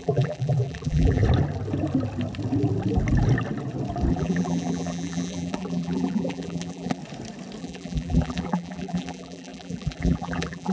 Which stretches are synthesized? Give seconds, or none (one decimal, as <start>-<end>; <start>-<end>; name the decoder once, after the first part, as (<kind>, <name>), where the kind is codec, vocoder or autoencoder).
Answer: 0.0-1.2 (vocoder, BigVGAN v2); 4.1-7.0; 7.6-10.7